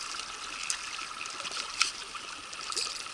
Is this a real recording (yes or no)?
yes